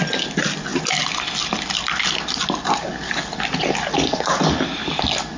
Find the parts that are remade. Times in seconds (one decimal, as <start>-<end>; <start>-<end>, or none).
none

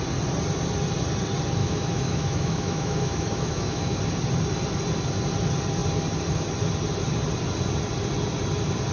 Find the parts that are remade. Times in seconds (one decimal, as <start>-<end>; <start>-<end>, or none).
1.6-4.0

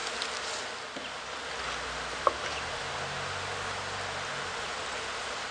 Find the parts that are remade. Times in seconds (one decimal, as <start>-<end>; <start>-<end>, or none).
none